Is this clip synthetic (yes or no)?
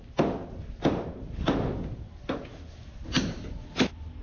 no